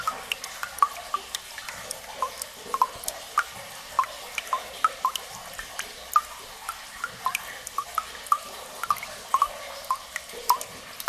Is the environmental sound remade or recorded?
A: recorded